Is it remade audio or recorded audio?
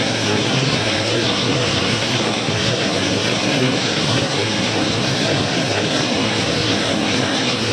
remade